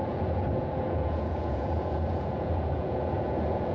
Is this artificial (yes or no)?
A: yes